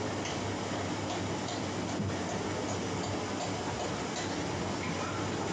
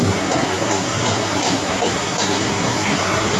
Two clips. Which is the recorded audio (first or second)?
first